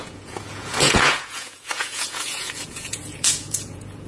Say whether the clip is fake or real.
fake